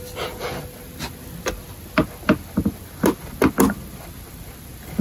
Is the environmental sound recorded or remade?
recorded